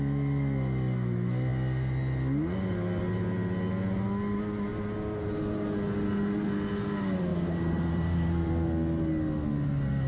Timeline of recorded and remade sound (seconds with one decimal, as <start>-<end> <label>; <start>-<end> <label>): 0.0-7.3 recorded; 7.3-8.5 remade; 8.5-10.1 recorded